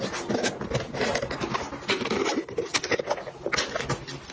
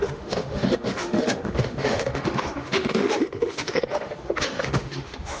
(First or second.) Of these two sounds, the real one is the first